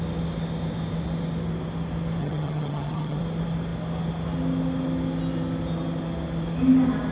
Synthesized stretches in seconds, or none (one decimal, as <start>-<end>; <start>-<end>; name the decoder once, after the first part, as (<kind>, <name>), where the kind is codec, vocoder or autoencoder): 2.2-3.2 (vocoder, HiFi-GAN)